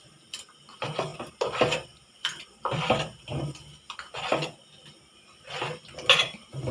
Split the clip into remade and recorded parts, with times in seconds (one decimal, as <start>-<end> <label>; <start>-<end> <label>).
0.0-6.7 recorded

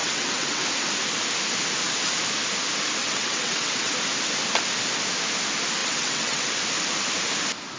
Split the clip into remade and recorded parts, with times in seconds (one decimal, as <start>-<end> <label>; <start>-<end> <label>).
0.0-0.6 remade; 0.6-3.0 recorded; 3.0-3.9 remade; 3.9-5.8 recorded; 5.8-6.4 remade; 6.4-7.8 recorded

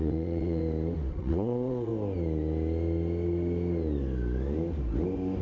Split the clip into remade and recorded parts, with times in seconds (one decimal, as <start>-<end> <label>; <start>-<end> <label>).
0.0-0.6 remade; 0.6-1.1 recorded; 1.1-1.9 remade; 1.9-5.4 recorded

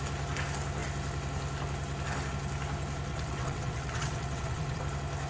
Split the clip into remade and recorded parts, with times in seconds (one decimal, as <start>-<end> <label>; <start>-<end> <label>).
0.0-3.1 recorded; 3.1-4.8 remade; 4.8-5.3 recorded

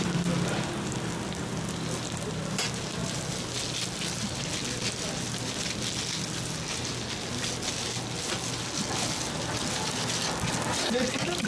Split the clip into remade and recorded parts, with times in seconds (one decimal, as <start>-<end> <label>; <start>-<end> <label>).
0.0-11.5 recorded

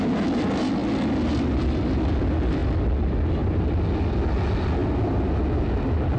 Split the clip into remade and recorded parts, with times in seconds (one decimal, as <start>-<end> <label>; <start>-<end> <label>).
0.0-6.2 recorded

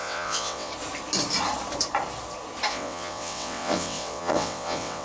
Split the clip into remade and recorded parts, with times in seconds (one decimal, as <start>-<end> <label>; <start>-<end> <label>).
0.0-0.7 remade; 0.7-2.7 recorded; 2.7-5.0 remade